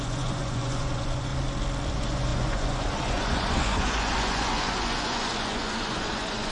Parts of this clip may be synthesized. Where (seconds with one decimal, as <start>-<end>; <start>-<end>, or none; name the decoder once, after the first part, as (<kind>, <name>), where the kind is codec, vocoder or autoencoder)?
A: 0.0-1.3 (vocoder, Vocos); 1.9-6.5